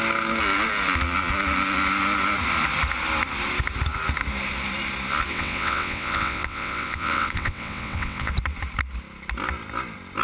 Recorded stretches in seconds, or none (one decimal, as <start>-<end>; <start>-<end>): 0.0-5.3; 8.3-10.2